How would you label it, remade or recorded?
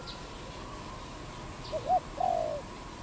recorded